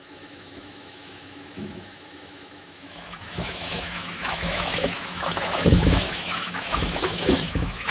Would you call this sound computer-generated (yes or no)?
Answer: yes